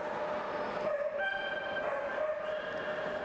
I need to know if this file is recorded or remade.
recorded